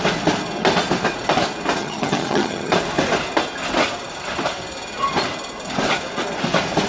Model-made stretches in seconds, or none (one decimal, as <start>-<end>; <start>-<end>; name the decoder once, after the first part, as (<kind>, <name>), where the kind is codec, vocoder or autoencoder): 1.8-2.7 (vocoder, HiFi-GAN)